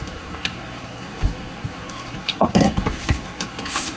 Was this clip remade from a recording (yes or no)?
yes